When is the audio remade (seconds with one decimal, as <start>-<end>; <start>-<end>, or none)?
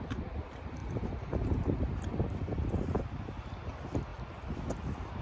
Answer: none